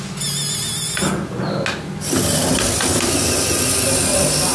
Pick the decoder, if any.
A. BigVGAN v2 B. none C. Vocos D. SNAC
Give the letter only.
B